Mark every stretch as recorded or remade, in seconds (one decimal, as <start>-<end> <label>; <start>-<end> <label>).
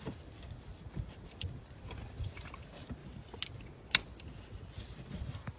0.0-3.0 remade; 3.0-5.6 recorded